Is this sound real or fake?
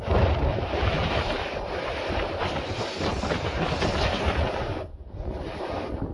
real